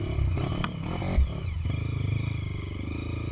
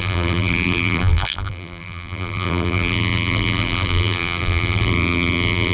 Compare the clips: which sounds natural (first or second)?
first